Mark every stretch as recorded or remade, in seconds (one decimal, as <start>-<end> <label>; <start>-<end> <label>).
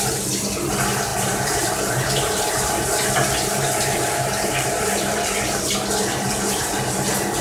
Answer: 0.0-1.1 recorded; 1.1-5.4 remade; 5.4-6.1 recorded; 6.1-7.0 remade; 7.0-7.4 recorded